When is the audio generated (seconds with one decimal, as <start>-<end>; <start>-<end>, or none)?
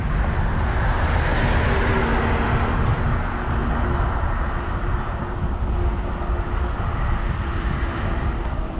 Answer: none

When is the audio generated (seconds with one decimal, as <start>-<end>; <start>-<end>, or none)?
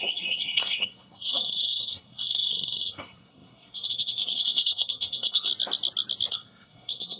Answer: 0.0-5.5; 6.3-7.2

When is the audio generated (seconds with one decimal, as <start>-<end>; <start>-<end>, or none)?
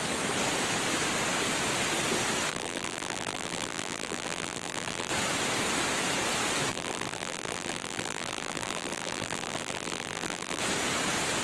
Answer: 2.5-5.1; 6.7-10.6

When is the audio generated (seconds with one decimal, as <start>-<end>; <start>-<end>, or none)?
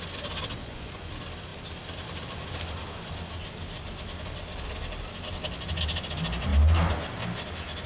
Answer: 0.6-1.1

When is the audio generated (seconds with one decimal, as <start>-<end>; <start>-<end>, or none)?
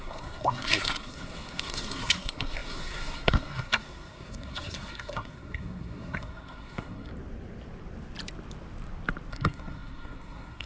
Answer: 0.0-7.1; 9.3-10.7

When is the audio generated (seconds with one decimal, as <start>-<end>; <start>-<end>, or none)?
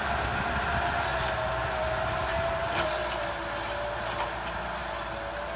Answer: none